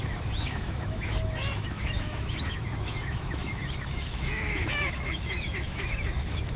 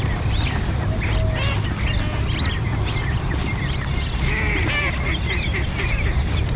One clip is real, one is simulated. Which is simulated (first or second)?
first